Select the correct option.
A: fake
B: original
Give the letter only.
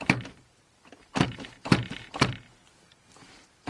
A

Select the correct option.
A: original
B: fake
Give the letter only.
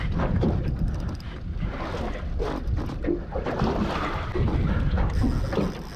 A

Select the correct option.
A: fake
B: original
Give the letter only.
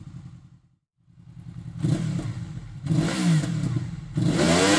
B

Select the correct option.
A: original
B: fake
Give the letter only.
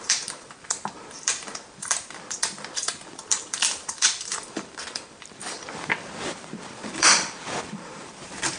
B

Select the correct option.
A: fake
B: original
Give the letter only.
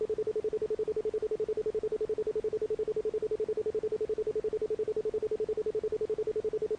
B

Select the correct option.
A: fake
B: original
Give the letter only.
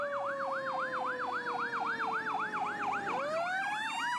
B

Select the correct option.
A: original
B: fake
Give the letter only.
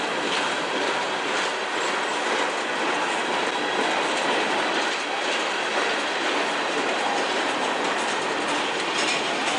A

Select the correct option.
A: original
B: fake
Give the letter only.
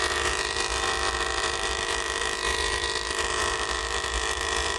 B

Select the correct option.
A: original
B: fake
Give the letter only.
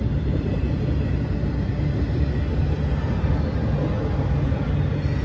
A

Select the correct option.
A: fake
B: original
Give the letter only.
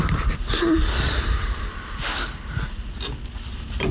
B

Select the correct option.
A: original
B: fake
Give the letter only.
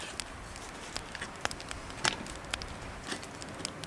A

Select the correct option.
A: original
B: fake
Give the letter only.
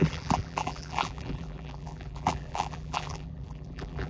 B